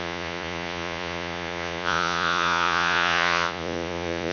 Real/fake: fake